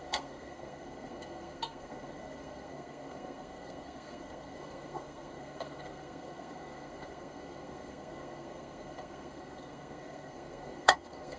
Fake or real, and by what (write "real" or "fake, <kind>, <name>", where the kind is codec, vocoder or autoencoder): fake, codec, SNAC